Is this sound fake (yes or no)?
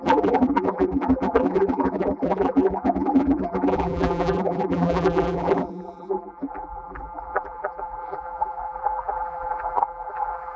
yes